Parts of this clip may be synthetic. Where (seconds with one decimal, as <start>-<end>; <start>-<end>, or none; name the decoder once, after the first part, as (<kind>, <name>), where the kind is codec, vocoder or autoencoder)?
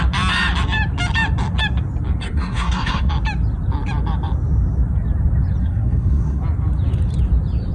2.2-3.1 (codec, SNAC); 5.6-6.4